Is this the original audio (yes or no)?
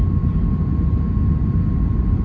yes